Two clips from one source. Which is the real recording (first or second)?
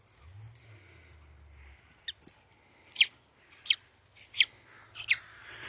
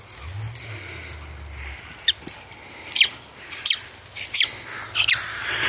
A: first